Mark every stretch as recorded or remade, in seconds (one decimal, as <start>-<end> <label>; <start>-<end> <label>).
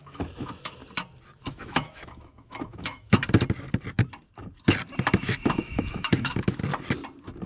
0.0-0.8 remade; 0.8-1.5 recorded; 1.5-3.2 remade; 3.2-5.1 recorded; 5.1-6.6 remade; 6.6-7.5 recorded